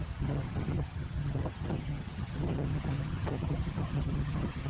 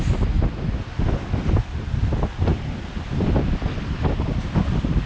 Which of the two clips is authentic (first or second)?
second